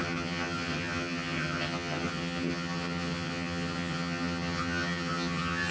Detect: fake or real fake